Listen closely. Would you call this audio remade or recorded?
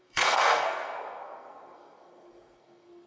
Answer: remade